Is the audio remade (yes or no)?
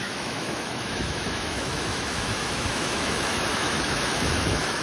yes